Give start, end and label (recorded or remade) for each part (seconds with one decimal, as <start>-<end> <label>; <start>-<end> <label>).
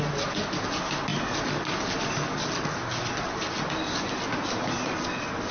0.0-5.5 recorded